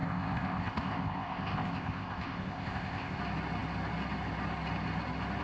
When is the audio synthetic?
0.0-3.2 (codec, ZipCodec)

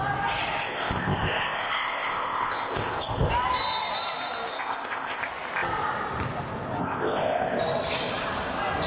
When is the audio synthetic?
0.6-3.3 (codec, ZipCodec); 4.5-5.2; 6.8-7.6

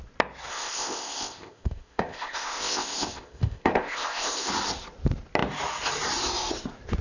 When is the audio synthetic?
0.5-4.5 (codec, ZipCodec)

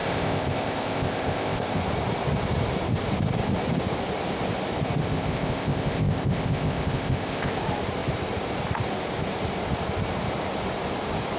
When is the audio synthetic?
0.0-1.8 (codec, ZipCodec); 5.0-7.6

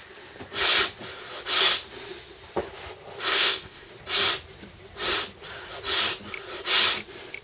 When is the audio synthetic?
3.3-3.9 (codec, ZipCodec)

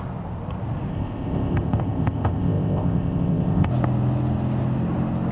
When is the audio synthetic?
0.9-3.7 (codec, ZipCodec)

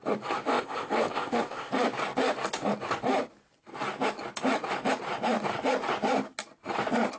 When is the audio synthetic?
0.5-1.7 (codec, ZipCodec)